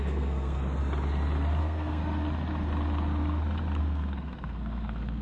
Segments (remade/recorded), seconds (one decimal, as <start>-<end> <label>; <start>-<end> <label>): 0.0-0.8 remade; 0.8-1.6 recorded; 1.6-2.0 remade; 2.0-3.8 recorded; 3.8-5.2 remade

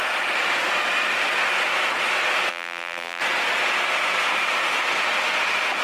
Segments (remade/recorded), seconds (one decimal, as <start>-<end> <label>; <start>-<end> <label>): 0.0-2.5 recorded; 2.5-3.2 remade; 3.2-5.8 recorded

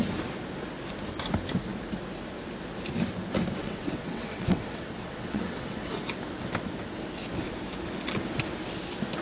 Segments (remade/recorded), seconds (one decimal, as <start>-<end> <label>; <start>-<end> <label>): 0.0-3.6 recorded; 3.6-6.0 remade; 6.0-9.2 recorded

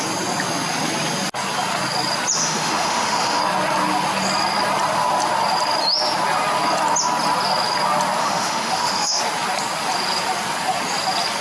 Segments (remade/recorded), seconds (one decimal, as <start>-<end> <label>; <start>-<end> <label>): 0.0-2.4 recorded; 2.4-3.4 remade; 3.4-8.2 recorded; 8.2-9.2 remade; 9.2-11.4 recorded